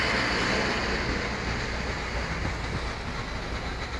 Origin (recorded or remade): recorded